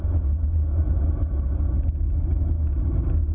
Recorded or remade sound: recorded